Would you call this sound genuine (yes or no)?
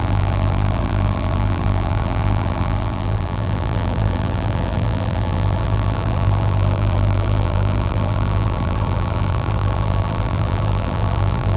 no